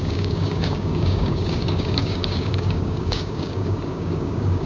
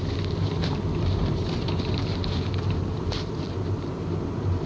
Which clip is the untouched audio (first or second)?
second